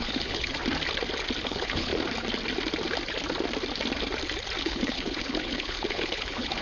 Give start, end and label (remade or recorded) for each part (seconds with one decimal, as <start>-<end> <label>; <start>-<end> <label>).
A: 0.0-0.6 remade; 0.6-1.4 recorded; 1.4-1.9 remade; 1.9-4.6 recorded; 4.6-6.6 remade